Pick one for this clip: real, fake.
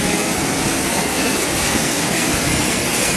fake